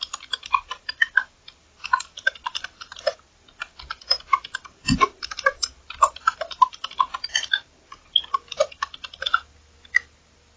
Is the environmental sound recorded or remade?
remade